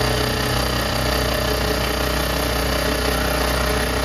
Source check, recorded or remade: recorded